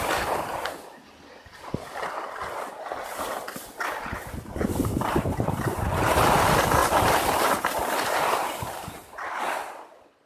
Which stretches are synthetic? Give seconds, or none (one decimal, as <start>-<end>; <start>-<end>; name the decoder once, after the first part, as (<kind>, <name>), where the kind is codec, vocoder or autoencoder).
6.8-9.4 (vocoder, BigVGAN v2)